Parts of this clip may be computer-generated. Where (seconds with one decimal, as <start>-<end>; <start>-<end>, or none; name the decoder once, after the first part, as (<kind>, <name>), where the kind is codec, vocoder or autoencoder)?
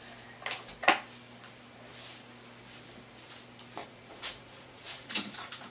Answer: 3.8-5.7 (vocoder, Vocos)